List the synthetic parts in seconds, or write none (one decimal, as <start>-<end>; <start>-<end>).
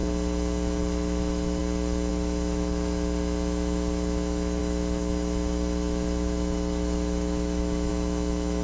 0.8-1.6; 2.1-8.6